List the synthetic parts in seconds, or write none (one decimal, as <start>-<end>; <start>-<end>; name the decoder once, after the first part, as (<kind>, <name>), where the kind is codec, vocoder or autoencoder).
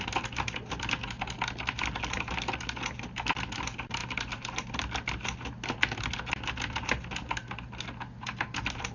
none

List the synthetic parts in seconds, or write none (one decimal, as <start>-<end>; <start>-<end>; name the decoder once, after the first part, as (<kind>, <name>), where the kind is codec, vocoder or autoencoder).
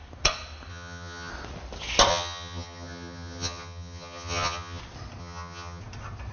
0.7-1.3 (vocoder, HiFi-GAN); 2.1-4.8; 5.2-5.8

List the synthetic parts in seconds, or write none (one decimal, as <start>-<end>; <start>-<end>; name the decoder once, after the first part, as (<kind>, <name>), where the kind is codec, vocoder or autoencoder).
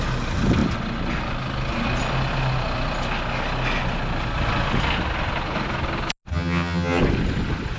6.3-7.0 (vocoder, HiFi-GAN)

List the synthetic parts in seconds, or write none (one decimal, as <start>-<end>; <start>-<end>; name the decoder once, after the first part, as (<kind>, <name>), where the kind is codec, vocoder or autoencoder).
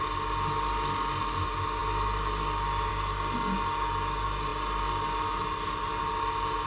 none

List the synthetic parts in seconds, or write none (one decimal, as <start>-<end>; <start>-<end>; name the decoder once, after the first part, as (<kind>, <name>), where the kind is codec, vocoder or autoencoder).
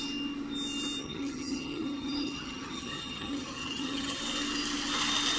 1.0-4.2 (vocoder, HiFi-GAN)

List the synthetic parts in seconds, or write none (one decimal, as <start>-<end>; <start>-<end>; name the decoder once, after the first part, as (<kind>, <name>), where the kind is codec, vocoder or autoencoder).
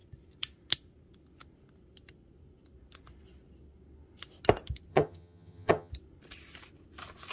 4.9-5.9 (vocoder, HiFi-GAN)